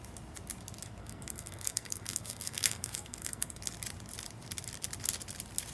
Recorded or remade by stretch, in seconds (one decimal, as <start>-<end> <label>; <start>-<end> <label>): 0.0-1.0 recorded; 1.0-3.6 remade; 3.6-5.7 recorded